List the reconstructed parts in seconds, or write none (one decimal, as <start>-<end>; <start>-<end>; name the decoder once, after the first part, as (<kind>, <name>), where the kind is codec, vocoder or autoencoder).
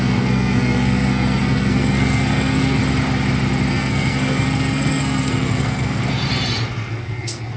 0.0-2.8 (codec, SNAC); 3.7-6.0; 6.9-7.6